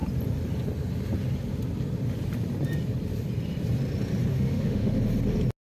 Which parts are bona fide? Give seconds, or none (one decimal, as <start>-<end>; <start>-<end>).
0.0-4.3; 5.0-5.6